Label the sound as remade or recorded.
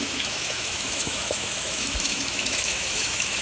remade